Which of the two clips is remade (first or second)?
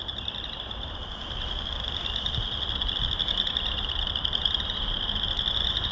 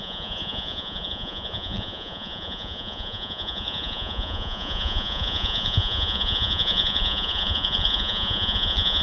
second